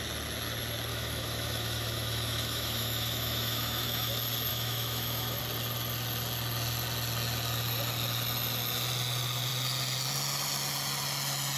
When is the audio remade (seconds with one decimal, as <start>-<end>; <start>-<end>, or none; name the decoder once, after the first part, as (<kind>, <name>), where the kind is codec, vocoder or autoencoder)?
0.9-4.1 (autoencoder, DAC-VAE); 4.5-5.4